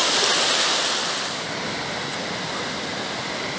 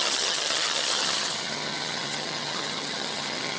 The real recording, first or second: first